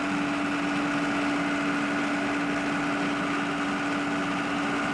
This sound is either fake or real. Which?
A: real